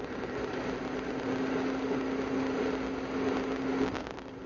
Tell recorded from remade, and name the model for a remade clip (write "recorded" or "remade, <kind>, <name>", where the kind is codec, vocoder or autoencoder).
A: recorded